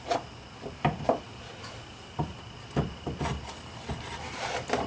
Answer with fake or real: real